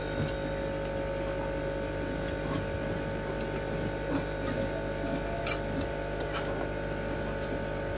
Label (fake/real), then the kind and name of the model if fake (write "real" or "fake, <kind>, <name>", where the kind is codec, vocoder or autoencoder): real